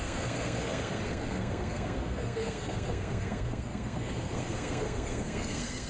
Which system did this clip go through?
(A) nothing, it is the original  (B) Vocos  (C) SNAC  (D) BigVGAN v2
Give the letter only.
C